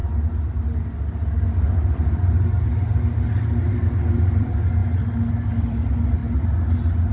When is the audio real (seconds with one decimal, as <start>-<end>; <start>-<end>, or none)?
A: 0.0-3.6; 4.8-5.5; 6.2-7.1